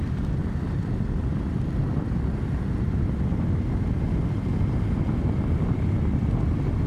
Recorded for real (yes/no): yes